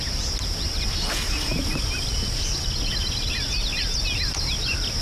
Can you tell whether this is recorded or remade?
recorded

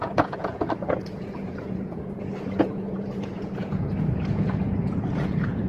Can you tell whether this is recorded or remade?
remade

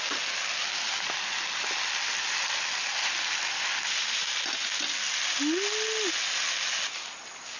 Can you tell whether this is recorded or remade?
recorded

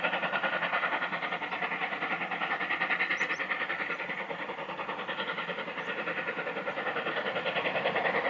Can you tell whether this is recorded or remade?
recorded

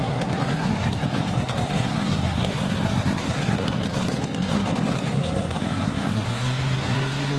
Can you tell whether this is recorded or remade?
remade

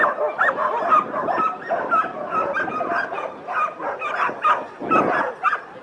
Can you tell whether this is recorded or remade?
recorded